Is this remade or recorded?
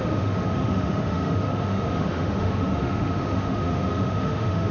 remade